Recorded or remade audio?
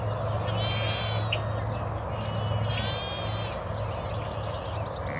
recorded